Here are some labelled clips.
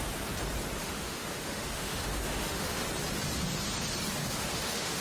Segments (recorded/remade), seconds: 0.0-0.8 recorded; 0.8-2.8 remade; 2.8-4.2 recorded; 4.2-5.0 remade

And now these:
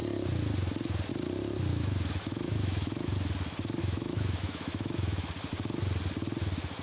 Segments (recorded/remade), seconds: 0.0-1.7 recorded; 1.7-3.1 remade; 3.1-3.8 recorded; 3.8-5.3 remade; 5.3-6.8 recorded

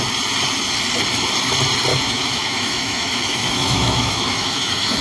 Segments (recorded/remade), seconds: 0.0-1.9 recorded; 1.9-5.0 remade

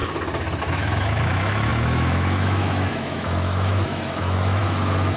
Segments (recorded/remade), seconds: 0.0-0.6 recorded; 0.6-5.2 remade